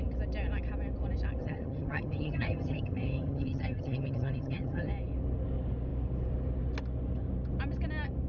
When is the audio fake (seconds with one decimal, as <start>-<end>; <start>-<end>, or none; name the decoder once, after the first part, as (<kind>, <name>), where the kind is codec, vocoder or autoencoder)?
1.4-4.9 (vocoder, HiFi-GAN)